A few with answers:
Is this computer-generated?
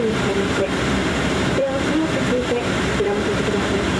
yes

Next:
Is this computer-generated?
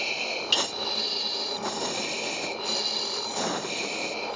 no